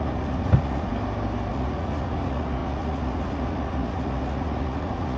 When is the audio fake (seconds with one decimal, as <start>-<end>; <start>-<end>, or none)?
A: 0.0-0.9; 1.5-5.2